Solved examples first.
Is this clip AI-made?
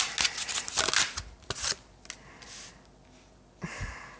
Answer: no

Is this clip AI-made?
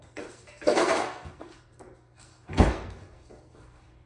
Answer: yes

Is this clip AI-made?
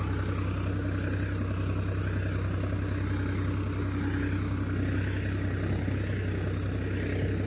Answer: no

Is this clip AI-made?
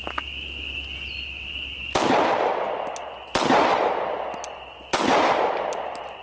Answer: no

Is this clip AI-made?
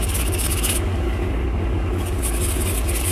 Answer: yes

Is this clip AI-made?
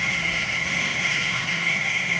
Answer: yes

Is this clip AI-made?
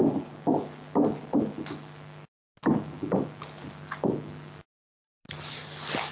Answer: no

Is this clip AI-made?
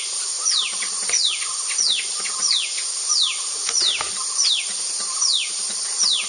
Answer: no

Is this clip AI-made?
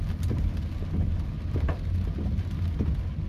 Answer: no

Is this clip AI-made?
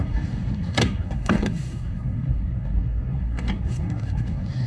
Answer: yes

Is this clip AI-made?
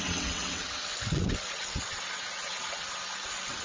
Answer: yes